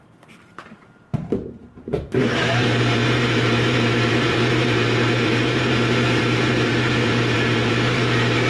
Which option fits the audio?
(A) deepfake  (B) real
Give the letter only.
A